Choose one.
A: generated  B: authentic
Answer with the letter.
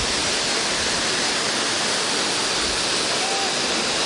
B